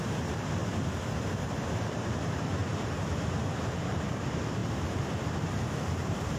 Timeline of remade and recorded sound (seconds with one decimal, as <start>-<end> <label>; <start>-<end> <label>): 0.0-0.6 remade; 0.6-1.5 recorded; 1.5-2.6 remade; 2.6-3.5 recorded; 3.5-6.4 remade